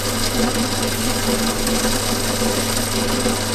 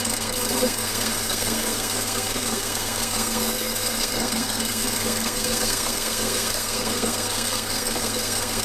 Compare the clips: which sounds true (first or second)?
first